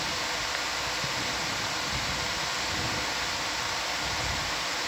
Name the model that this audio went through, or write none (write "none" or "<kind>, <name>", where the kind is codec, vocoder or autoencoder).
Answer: none